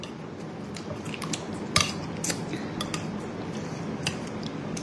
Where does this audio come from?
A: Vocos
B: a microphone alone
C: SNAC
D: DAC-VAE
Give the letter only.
B